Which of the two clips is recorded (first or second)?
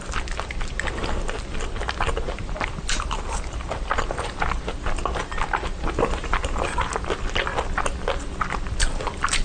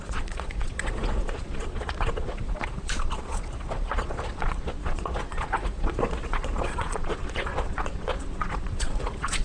first